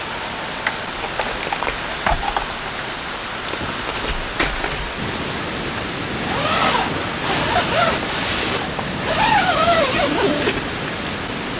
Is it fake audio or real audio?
real